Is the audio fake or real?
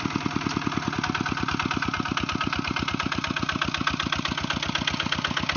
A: real